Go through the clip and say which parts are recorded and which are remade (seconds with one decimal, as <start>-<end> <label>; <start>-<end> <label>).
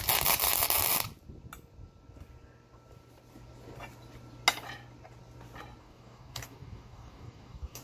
0.0-5.8 recorded; 5.8-7.8 remade